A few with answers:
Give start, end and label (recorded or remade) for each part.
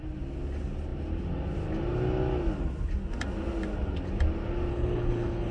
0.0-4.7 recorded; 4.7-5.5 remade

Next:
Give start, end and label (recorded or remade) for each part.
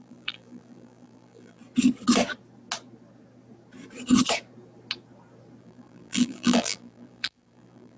0.0-1.6 remade; 1.6-5.6 recorded; 5.6-8.0 remade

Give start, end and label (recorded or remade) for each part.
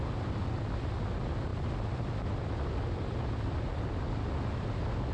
0.0-5.1 recorded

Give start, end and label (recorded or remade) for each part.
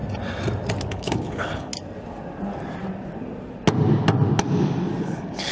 0.0-0.9 recorded; 0.9-1.7 remade; 1.7-5.0 recorded; 5.0-5.5 remade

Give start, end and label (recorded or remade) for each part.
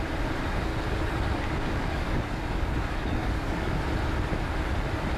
0.0-0.7 recorded; 0.7-3.8 remade; 3.8-5.2 recorded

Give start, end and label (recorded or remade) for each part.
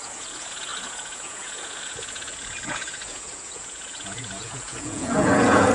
0.0-5.7 remade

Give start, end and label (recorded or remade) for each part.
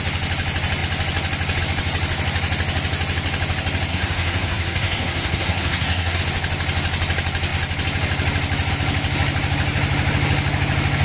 0.0-3.9 recorded; 3.9-6.2 remade; 6.2-11.0 recorded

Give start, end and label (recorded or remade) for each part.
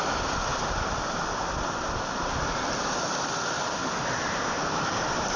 0.0-0.5 recorded; 0.5-1.5 remade; 1.5-3.8 recorded; 3.8-5.4 remade